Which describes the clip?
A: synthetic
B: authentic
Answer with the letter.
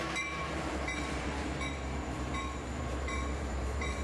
A